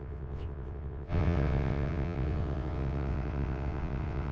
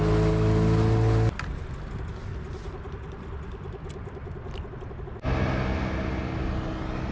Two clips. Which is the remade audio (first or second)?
first